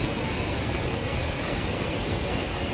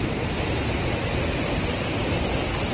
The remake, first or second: first